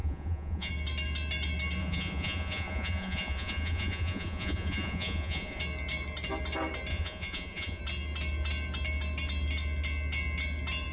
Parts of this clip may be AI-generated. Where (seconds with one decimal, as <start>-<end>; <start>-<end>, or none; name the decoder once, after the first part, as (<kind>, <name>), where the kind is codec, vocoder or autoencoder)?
0.0-0.7 (vocoder, Vocos); 1.8-5.6; 6.9-7.8